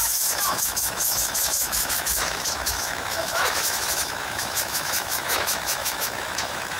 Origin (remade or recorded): remade